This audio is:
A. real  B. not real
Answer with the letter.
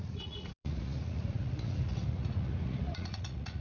B